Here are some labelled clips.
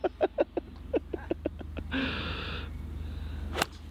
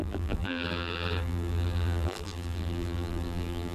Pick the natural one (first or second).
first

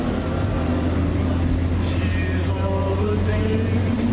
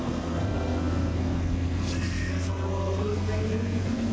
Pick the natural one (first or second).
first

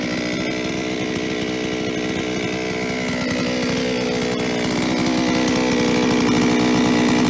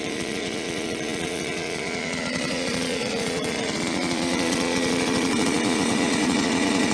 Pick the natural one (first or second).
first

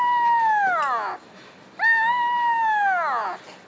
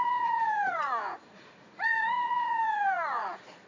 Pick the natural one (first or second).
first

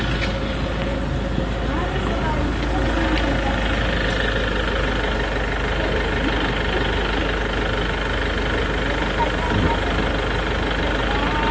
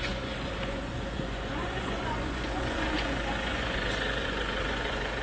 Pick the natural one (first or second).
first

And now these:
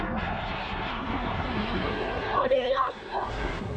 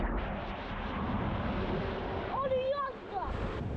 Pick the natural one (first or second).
second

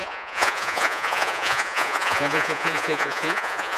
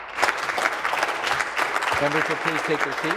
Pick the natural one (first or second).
second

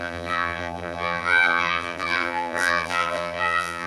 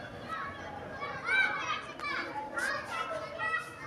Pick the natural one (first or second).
second